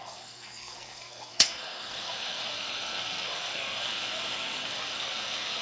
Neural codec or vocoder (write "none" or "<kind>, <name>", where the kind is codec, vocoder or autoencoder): codec, SNAC